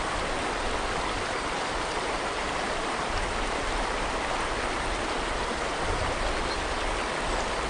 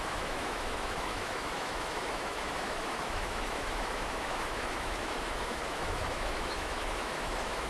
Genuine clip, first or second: first